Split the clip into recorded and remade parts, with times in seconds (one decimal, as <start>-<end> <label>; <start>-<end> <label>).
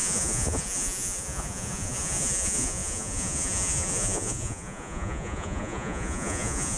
0.0-6.8 remade